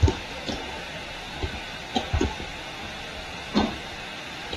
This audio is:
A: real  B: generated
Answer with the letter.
A